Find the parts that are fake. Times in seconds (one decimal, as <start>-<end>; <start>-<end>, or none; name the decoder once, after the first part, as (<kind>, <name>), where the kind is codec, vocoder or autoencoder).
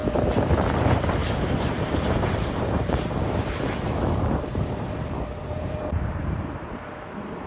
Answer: 0.0-7.5 (vocoder, BigVGAN v2)